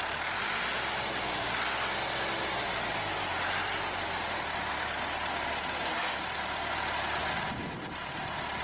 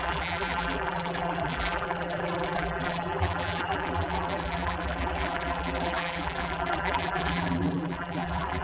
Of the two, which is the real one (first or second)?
first